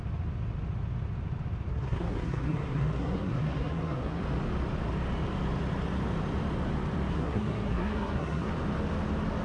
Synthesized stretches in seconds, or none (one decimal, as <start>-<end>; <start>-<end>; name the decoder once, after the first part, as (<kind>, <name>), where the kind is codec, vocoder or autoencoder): 1.7-4.2 (codec, SNAC); 7.1-8.5